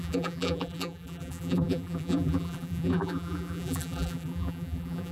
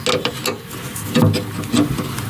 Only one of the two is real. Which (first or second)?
second